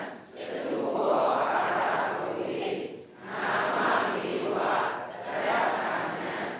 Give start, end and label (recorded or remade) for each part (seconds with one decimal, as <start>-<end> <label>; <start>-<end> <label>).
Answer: 0.0-0.9 recorded; 0.9-2.1 remade; 2.1-6.6 recorded